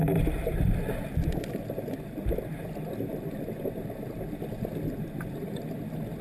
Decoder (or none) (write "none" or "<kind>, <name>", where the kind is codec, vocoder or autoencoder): none